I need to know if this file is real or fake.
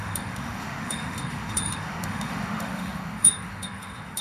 fake